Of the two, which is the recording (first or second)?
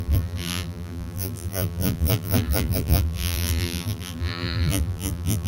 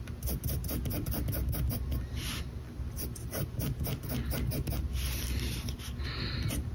second